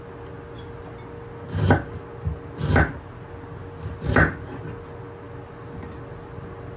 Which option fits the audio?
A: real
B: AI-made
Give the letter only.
A